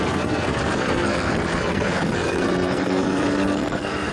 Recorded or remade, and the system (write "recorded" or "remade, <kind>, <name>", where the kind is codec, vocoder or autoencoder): remade, codec, SNAC